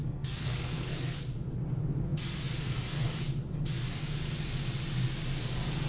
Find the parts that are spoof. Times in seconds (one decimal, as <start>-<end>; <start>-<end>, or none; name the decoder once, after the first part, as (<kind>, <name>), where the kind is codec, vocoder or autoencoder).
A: 0.0-1.2 (codec, SNAC)